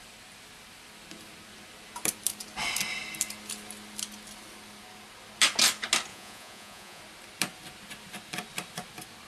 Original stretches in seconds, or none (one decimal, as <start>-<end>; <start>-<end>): 0.0-6.1; 7.0-9.3